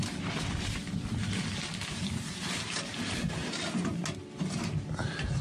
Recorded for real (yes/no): yes